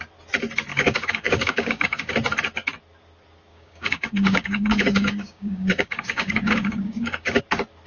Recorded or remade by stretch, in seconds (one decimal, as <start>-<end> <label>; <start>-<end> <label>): 0.0-0.7 recorded; 0.7-2.1 remade; 2.1-3.5 recorded; 3.5-7.4 remade; 7.4-7.9 recorded